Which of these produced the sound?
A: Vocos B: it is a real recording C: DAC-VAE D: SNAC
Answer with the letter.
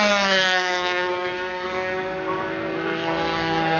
D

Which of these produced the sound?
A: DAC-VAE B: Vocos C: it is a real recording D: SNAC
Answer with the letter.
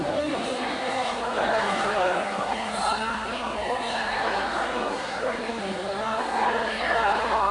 D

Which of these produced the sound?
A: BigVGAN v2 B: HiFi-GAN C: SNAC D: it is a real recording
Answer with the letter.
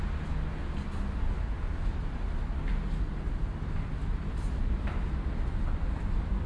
D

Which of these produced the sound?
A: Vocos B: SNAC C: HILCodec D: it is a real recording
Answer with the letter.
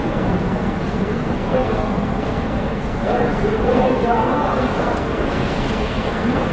B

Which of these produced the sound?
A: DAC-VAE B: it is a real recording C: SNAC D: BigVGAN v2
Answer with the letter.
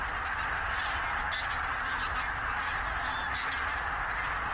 B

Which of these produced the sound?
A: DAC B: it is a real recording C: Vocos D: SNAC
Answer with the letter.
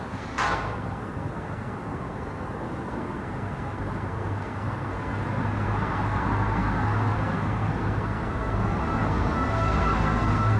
D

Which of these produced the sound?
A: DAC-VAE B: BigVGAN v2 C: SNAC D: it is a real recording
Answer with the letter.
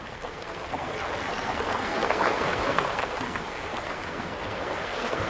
C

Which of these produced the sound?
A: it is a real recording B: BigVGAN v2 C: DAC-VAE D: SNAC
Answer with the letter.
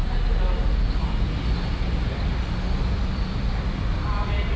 A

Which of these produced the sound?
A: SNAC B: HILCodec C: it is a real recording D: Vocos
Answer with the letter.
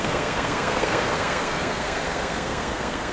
A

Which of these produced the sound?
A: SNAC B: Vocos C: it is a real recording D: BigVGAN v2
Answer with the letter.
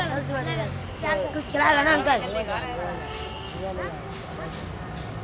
C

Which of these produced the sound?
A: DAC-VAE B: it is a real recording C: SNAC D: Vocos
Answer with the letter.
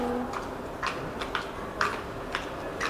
B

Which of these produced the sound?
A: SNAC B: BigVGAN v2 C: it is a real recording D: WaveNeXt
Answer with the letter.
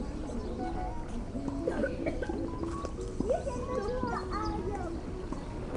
C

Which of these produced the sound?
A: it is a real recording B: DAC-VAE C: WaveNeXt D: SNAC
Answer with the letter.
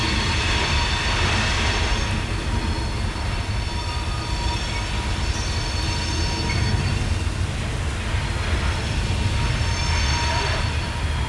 A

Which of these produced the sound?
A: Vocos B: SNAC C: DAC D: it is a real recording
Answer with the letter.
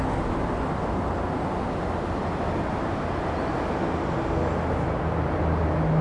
D